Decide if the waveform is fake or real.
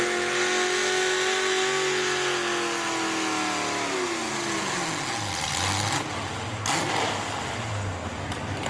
real